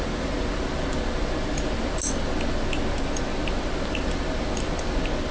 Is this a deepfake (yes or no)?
no